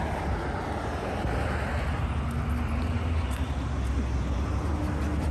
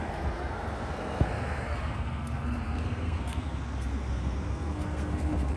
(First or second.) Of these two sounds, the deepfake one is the second